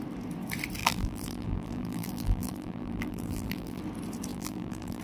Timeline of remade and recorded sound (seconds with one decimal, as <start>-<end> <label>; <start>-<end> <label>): 0.0-0.8 recorded; 0.8-3.8 remade; 3.8-4.3 recorded; 4.3-5.0 remade